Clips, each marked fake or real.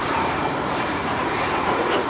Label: fake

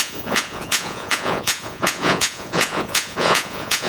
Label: fake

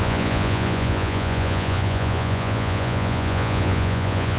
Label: fake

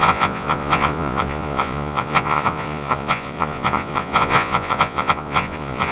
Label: fake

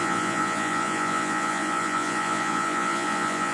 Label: fake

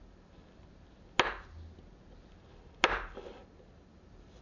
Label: real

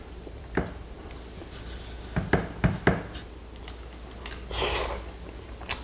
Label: real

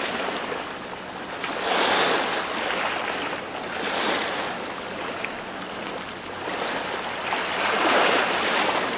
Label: real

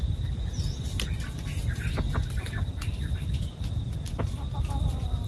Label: real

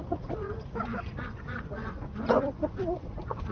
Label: fake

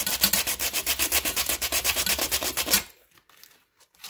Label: real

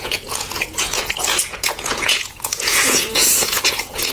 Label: fake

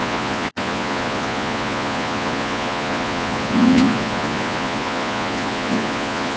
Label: fake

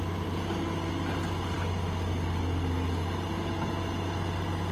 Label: real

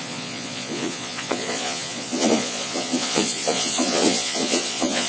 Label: fake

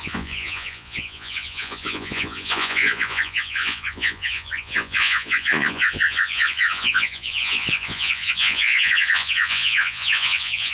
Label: fake